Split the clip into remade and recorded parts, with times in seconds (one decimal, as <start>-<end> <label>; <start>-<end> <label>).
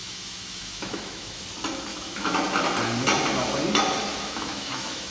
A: 0.0-1.4 remade; 1.4-1.9 recorded; 1.9-2.4 remade; 2.4-4.1 recorded; 4.1-5.1 remade